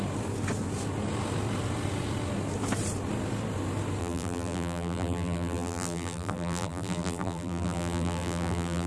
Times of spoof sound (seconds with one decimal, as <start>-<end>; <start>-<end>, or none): 4.0-8.9